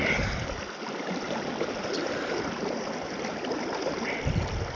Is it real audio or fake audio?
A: real